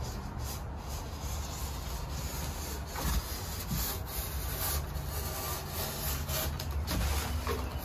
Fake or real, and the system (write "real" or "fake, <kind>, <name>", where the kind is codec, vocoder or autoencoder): real